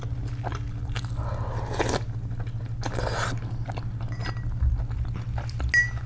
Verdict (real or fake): real